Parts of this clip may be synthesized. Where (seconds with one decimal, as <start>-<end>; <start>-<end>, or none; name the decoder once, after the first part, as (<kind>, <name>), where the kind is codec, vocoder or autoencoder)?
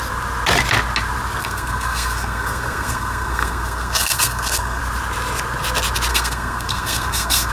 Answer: 1.4-4.8 (codec, SNAC); 6.1-7.5